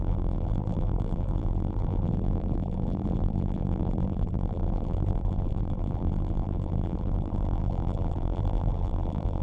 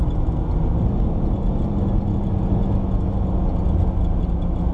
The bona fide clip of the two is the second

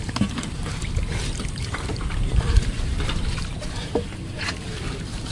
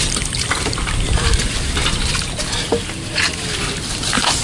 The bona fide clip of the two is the second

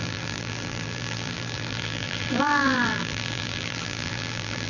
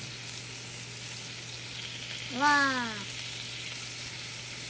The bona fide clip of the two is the second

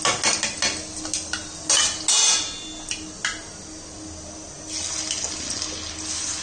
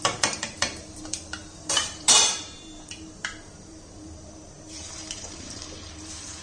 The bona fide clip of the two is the first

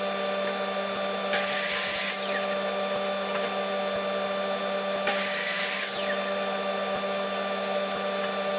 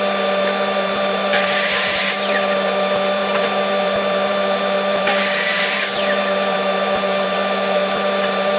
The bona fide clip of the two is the first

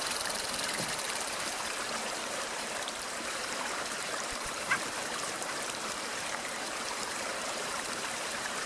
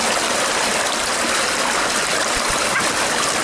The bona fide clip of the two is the second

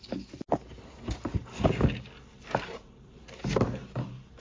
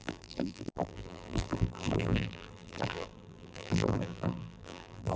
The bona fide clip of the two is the first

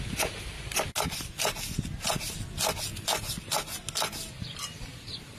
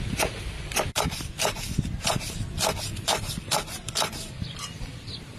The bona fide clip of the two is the first